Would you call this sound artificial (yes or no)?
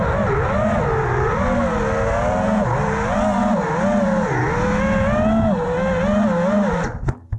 no